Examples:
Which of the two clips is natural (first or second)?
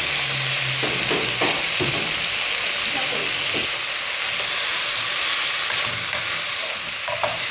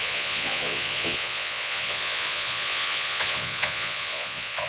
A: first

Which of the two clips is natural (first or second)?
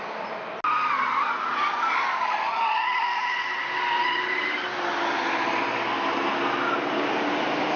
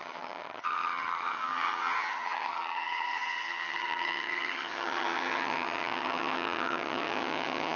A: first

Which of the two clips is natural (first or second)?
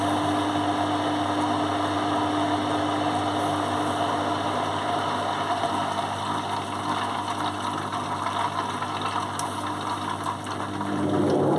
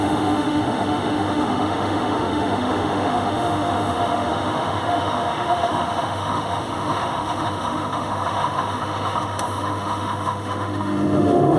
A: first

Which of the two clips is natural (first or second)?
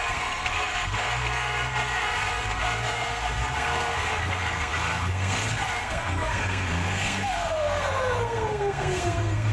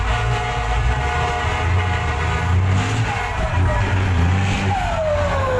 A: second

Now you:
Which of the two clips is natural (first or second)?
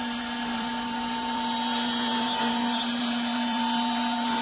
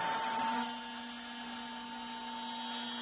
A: second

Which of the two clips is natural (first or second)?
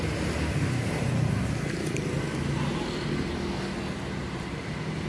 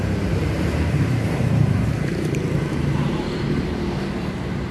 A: first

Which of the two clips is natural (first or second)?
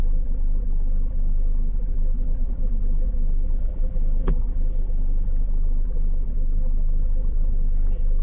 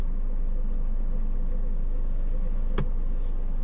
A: second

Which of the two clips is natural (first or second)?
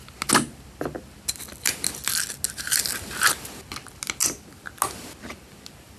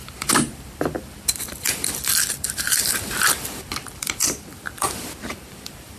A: first